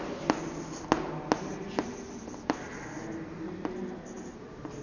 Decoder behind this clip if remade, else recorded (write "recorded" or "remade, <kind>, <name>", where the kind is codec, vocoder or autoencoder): recorded